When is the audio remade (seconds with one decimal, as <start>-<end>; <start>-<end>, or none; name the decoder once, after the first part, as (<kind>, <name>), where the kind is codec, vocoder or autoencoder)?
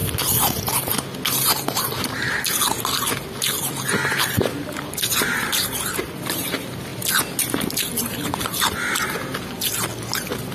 none